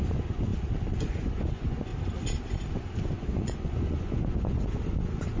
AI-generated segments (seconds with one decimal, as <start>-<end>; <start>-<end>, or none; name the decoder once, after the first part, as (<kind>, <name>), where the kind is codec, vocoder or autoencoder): 0.0-0.5 (vocoder, Vocos); 1.0-1.9; 3.0-5.4